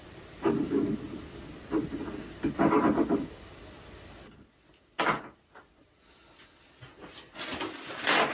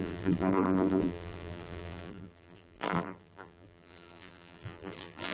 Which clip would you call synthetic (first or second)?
second